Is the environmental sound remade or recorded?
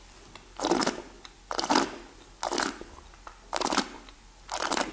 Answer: recorded